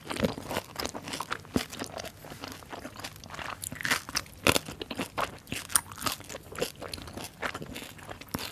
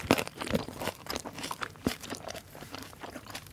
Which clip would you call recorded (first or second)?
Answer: first